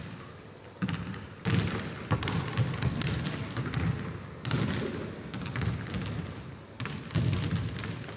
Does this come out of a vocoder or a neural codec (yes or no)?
no